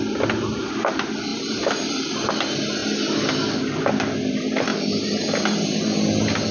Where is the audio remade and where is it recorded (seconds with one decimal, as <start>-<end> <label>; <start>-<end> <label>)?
0.0-6.5 recorded